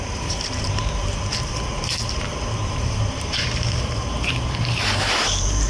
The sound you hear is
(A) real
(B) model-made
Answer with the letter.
B